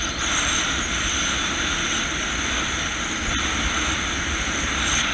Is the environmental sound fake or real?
real